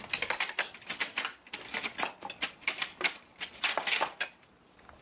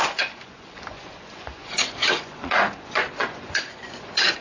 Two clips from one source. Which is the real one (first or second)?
first